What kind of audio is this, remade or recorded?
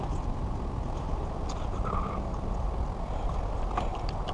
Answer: recorded